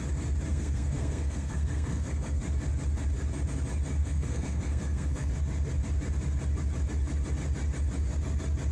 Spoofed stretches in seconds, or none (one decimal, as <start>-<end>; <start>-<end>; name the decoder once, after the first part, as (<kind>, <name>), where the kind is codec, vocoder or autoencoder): 0.5-2.4 (codec, SNAC); 4.0-5.3